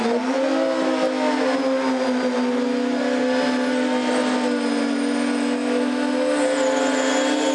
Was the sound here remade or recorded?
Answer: recorded